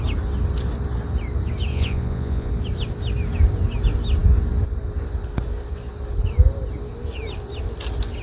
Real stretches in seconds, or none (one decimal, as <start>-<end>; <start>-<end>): 0.0-1.7; 2.5-8.2